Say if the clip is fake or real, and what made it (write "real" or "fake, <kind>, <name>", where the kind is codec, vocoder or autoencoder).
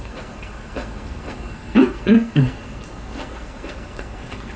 fake, codec, SNAC